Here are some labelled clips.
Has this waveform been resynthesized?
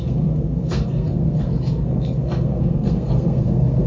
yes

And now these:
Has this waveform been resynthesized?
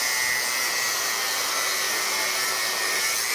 no